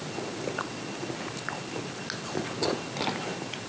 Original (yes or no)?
yes